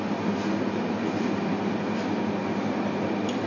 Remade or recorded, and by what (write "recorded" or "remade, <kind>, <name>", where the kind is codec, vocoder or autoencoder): recorded